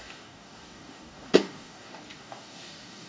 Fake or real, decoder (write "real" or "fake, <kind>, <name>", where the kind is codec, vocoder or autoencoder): fake, codec, DAC